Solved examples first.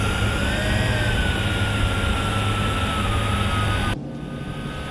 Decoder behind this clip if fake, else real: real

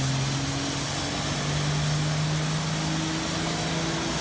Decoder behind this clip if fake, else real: real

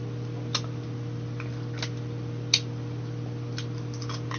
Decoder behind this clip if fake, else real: real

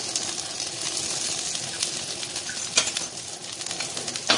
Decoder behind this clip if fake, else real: real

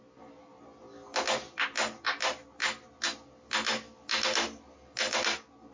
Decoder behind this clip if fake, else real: real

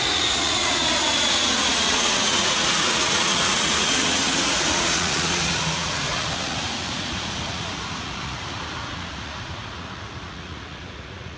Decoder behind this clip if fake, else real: fake, vocoder, Vocos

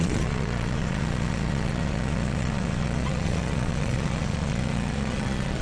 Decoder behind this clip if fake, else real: fake, vocoder, Vocos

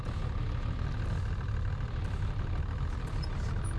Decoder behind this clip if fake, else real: real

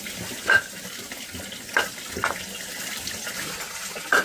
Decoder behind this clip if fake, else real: real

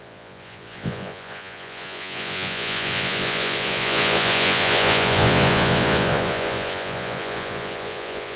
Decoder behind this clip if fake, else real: fake, vocoder, Vocos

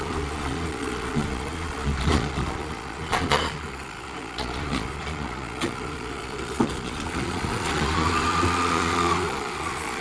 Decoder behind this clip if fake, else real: fake, vocoder, Vocos